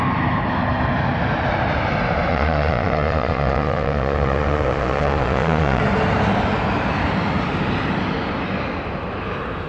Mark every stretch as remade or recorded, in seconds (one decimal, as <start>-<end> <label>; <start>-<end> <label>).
0.0-2.3 recorded; 2.3-5.8 remade; 5.8-9.7 recorded

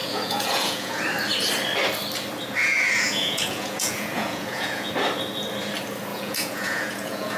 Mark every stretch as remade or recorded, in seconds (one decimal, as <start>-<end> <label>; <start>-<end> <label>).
0.0-1.0 remade; 1.0-2.6 recorded; 2.6-4.9 remade; 4.9-6.1 recorded; 6.1-7.4 remade

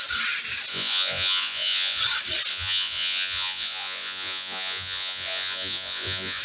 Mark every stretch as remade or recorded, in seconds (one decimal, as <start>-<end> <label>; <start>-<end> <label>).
0.0-0.7 recorded; 0.7-2.0 remade; 2.0-2.5 recorded; 2.5-6.4 remade

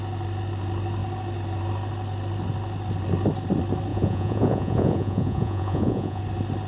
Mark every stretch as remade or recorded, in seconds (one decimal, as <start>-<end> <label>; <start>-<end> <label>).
0.0-3.9 recorded; 3.9-6.2 remade; 6.2-6.7 recorded

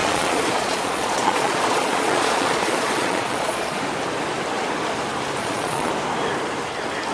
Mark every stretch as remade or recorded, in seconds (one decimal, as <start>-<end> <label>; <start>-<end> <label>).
0.0-3.8 remade; 3.8-5.4 recorded; 5.4-5.9 remade; 5.9-7.1 recorded